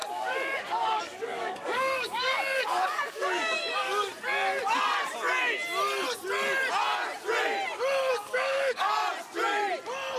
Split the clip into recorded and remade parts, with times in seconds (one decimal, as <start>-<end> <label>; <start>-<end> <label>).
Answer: 0.0-4.1 remade; 4.1-8.1 recorded; 8.1-9.0 remade; 9.0-10.2 recorded